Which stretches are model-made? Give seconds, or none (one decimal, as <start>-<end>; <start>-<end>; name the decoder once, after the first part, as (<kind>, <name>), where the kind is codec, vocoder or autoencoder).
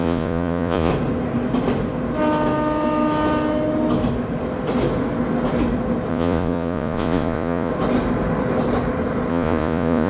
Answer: 0.0-0.9 (vocoder, Vocos); 6.1-7.7; 9.3-10.1